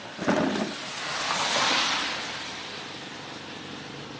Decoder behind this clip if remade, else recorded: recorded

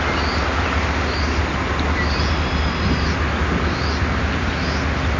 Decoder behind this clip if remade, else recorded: recorded